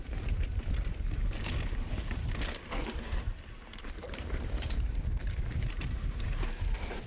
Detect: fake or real fake